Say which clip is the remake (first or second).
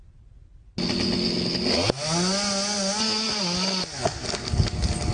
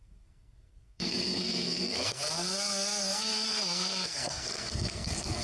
second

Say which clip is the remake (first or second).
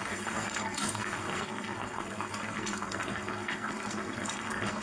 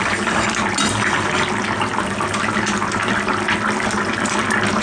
first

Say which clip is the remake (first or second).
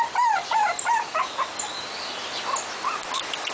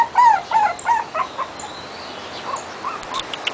first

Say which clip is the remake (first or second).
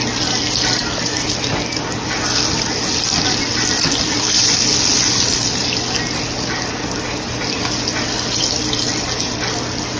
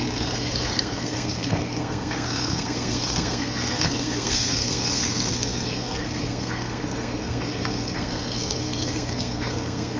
second